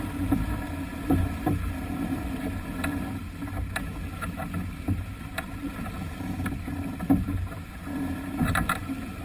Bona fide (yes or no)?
no